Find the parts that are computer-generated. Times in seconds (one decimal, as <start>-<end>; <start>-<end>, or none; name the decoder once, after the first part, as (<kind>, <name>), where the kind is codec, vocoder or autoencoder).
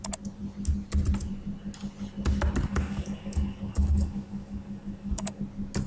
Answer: 2.7-5.4 (codec, DAC)